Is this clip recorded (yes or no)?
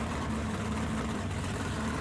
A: no